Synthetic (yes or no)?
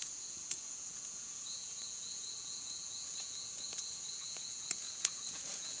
yes